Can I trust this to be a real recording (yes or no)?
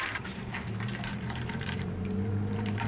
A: no